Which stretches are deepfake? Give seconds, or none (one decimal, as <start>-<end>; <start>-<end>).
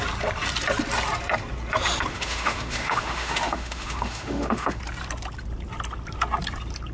2.1-4.8